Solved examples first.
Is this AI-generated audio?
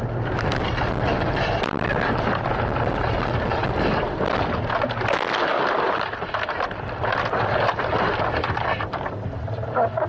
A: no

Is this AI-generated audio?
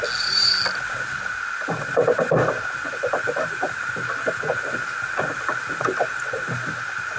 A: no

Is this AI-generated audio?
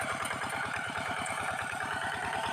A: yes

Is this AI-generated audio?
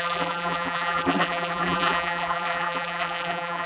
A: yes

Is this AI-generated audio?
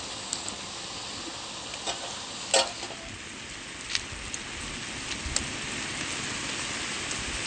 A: no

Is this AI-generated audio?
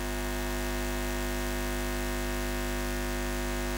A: no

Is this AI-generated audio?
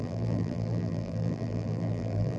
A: yes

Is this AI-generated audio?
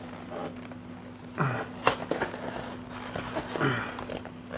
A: no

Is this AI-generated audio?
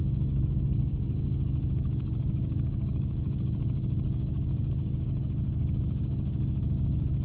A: yes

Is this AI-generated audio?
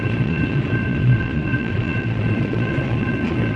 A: yes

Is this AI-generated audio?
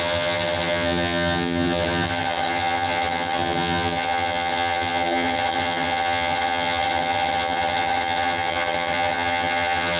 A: yes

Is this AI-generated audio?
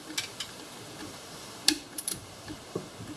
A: yes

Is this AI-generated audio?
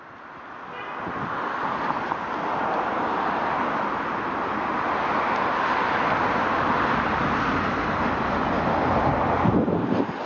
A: no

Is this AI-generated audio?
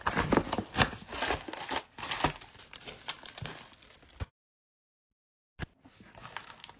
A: no